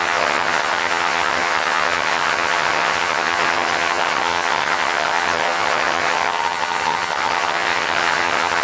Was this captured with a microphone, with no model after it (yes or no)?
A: no